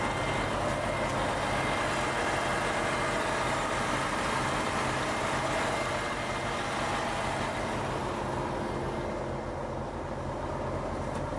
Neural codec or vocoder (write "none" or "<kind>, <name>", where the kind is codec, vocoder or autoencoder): none